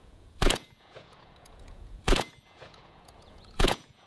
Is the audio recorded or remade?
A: remade